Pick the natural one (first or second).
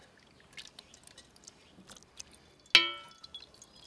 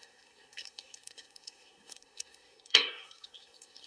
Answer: first